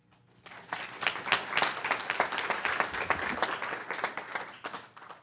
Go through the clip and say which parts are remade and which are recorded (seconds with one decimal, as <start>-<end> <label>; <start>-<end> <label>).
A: 0.0-5.2 recorded